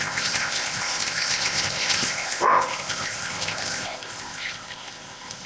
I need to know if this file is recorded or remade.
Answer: remade